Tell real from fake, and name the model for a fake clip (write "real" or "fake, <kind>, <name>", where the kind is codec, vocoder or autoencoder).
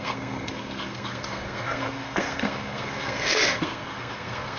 fake, codec, SNAC